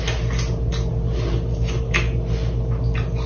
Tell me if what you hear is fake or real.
real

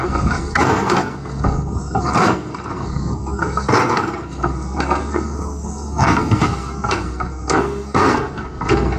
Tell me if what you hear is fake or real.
fake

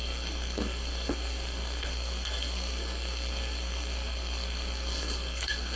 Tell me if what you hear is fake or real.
fake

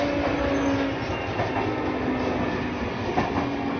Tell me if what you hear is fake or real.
real